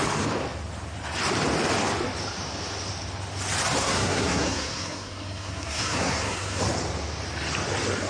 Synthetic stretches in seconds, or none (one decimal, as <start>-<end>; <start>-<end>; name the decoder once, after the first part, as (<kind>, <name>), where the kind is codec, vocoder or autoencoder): 3.8-6.6 (codec, SNAC)